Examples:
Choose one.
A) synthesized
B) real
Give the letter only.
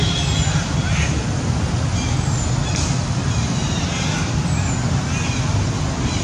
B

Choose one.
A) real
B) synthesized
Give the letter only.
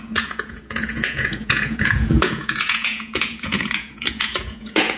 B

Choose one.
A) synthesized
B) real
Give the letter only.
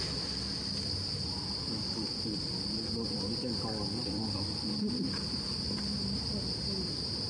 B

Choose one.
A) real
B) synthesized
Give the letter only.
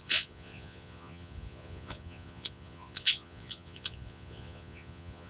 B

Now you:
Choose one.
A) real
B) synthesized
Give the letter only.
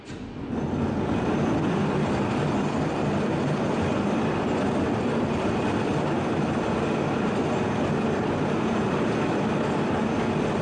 A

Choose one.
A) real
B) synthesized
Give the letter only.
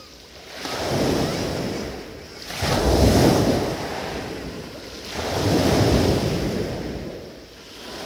A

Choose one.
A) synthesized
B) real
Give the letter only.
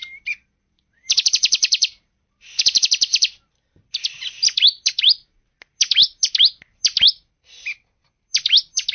B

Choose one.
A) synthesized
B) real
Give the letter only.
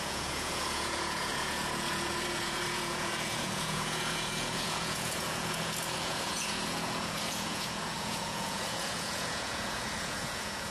A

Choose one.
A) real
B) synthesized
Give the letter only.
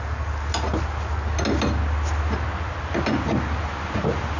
A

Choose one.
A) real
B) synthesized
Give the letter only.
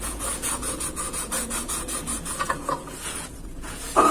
B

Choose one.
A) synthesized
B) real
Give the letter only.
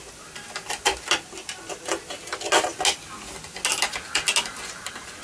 B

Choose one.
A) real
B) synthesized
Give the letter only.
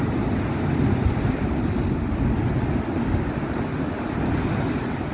A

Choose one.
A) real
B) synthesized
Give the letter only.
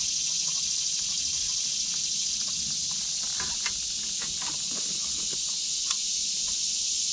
A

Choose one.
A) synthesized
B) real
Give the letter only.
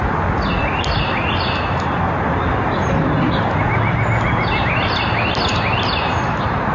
B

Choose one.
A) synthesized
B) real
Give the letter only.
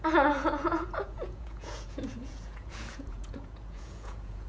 A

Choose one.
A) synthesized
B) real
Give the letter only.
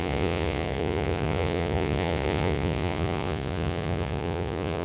A